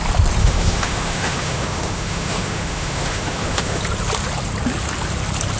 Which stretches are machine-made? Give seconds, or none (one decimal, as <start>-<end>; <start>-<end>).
0.4-3.8